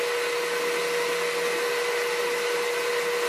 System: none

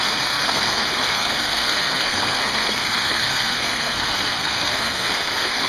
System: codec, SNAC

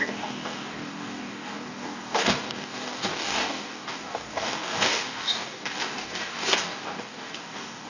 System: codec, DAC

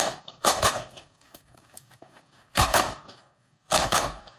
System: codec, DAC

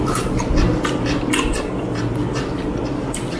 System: none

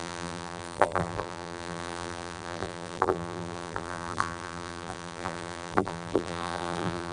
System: vocoder, BigVGAN v2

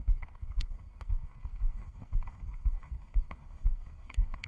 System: codec, SNAC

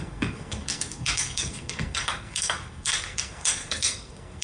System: codec, SNAC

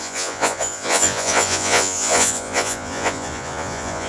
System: vocoder, Vocos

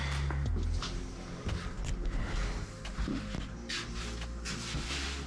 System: none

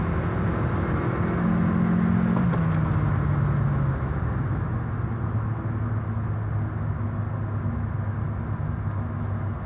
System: none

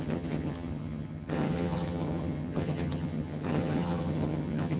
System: vocoder, HiFi-GAN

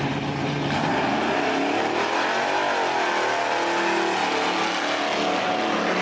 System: none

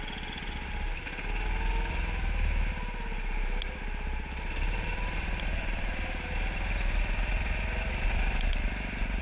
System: none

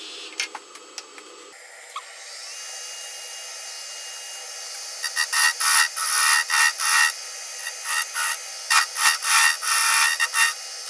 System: none